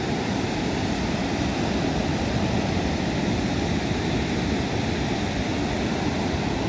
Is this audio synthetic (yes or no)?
no